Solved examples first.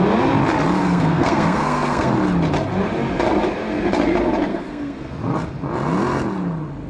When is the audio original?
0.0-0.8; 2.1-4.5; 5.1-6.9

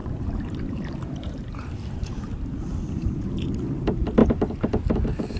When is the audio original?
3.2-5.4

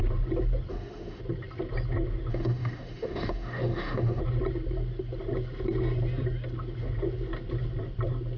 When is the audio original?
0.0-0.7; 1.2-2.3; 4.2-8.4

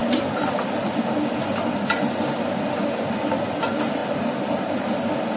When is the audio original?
0.0-5.4

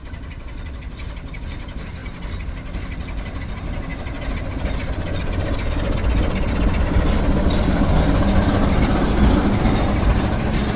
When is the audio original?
0.0-10.8

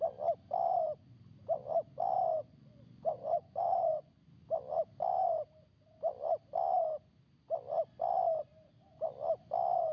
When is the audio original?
0.0-2.5; 4.1-9.9

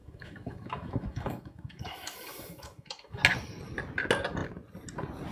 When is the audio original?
3.2-5.3

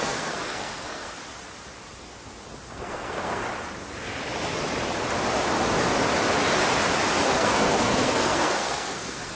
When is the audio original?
1.2-2.7; 3.4-7.2